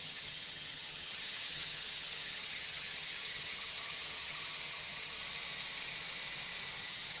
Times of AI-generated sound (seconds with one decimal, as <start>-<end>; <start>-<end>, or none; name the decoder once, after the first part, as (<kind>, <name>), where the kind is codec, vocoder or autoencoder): 0.0-5.2 (vocoder, HiFi-GAN); 6.8-7.2